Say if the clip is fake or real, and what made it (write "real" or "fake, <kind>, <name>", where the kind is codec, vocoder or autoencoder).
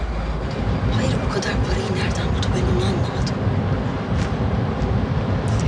real